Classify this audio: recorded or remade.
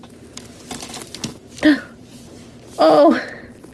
recorded